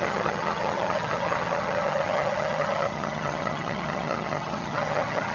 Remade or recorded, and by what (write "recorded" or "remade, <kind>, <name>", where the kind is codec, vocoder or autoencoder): remade, vocoder, HiFi-GAN